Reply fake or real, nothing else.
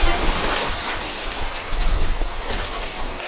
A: fake